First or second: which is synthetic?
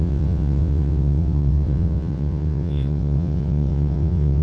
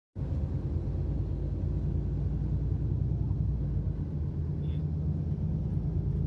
first